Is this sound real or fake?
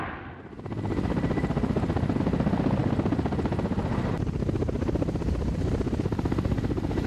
real